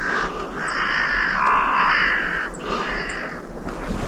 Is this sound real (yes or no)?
yes